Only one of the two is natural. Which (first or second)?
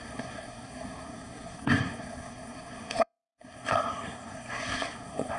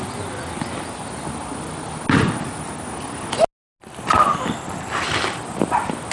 second